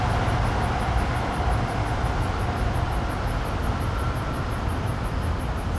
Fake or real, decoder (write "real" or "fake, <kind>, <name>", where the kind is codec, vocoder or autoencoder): real